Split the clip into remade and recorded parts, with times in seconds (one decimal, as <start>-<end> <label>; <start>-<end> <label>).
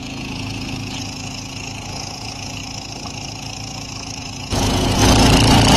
0.0-2.6 remade; 2.6-4.2 recorded; 4.2-5.0 remade; 5.0-5.8 recorded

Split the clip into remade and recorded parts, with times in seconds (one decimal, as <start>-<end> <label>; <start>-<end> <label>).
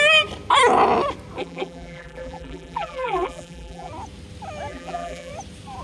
0.0-1.4 recorded; 1.4-3.9 remade; 3.9-4.7 recorded; 4.7-5.3 remade; 5.3-5.8 recorded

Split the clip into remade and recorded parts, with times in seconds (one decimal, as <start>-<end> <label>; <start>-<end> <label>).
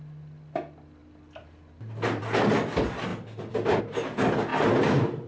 0.0-3.1 recorded; 3.1-3.8 remade; 3.8-4.5 recorded; 4.5-5.3 remade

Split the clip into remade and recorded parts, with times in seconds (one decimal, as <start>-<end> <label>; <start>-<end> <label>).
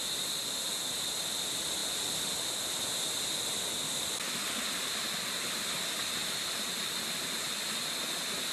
0.0-8.5 recorded